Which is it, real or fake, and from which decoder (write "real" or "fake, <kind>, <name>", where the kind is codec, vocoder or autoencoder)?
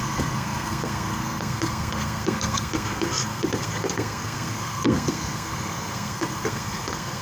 fake, codec, SNAC